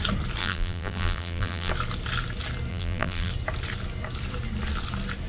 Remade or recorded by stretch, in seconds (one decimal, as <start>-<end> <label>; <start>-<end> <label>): 0.0-0.4 recorded; 0.4-1.7 remade; 1.7-2.7 recorded; 2.7-3.3 remade; 3.3-5.3 recorded